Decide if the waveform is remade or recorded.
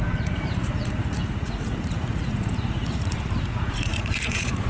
remade